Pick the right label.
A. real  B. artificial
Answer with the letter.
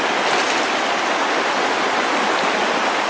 A